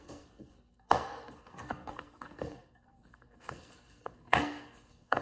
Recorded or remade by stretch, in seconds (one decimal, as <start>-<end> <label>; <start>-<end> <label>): 0.0-5.2 remade

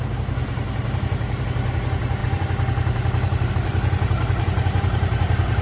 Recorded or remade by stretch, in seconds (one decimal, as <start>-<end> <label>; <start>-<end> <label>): 0.0-0.4 recorded; 0.4-1.4 remade; 1.4-5.6 recorded

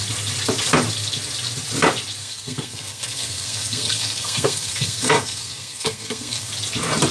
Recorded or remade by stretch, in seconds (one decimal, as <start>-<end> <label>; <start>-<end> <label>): 0.0-2.2 recorded; 2.2-6.5 remade; 6.5-7.1 recorded

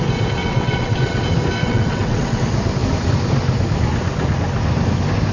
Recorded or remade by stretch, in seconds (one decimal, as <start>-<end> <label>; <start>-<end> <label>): 0.0-0.4 recorded; 0.4-1.2 remade; 1.2-1.6 recorded; 1.6-2.4 remade; 2.4-5.3 recorded

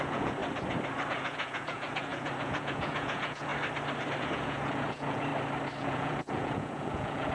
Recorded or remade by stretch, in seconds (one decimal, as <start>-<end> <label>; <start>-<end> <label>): 0.0-0.4 remade; 0.4-1.1 recorded; 1.1-3.5 remade; 3.5-4.2 recorded; 4.2-5.3 remade; 5.3-5.8 recorded; 5.8-7.3 remade

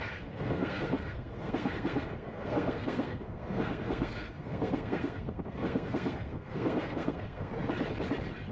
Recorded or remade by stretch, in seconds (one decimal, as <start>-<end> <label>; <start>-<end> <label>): 0.0-7.5 remade; 7.5-8.5 recorded

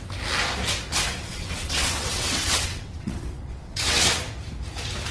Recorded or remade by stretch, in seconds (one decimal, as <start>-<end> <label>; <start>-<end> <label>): 0.0-1.1 recorded; 1.1-4.2 remade; 4.2-5.1 recorded